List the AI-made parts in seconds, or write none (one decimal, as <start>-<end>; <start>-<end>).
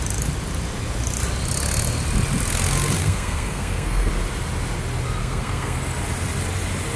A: 3.0-4.1; 5.2-5.8